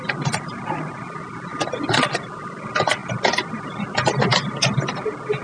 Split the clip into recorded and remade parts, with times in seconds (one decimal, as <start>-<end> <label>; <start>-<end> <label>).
0.0-5.4 recorded